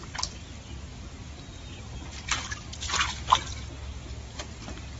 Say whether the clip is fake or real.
real